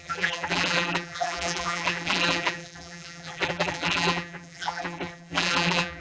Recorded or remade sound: remade